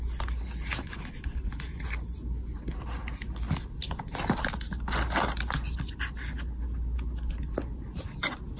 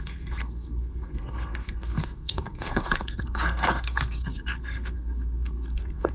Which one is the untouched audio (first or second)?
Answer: first